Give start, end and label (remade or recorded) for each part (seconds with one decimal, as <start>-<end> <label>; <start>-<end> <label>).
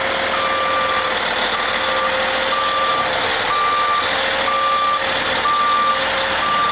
0.0-6.7 recorded